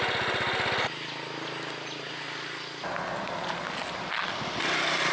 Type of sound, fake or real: real